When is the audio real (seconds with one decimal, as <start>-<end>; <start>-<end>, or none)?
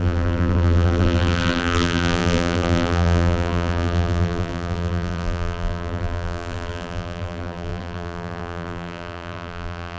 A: none